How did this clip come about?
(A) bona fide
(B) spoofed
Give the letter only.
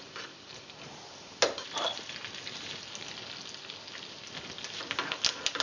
A